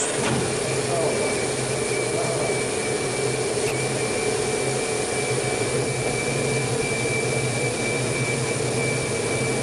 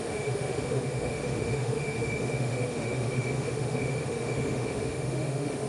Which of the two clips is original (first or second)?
first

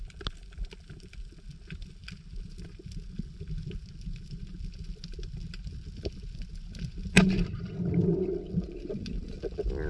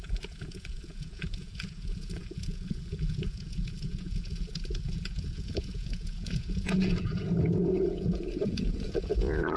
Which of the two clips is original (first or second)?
first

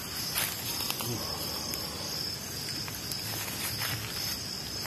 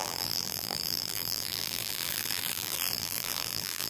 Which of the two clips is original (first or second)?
first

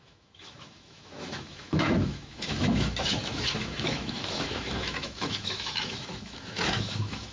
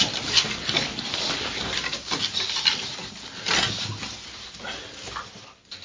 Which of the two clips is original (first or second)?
second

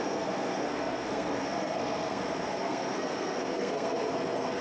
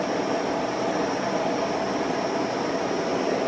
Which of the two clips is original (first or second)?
second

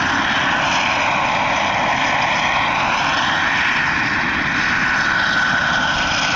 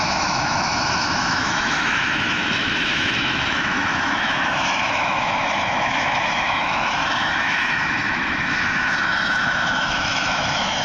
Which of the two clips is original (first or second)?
first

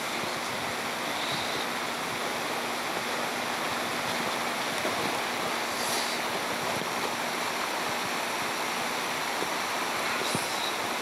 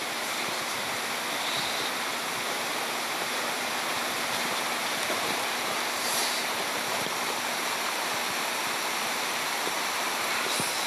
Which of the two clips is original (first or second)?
first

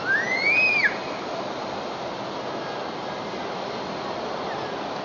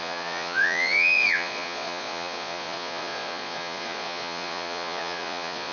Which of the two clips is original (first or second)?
first